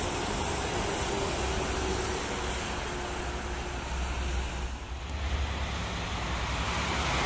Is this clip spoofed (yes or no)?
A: no